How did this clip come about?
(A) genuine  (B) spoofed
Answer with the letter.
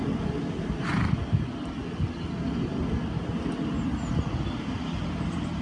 A